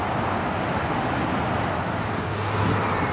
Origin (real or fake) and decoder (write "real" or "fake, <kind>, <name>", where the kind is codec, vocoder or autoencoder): real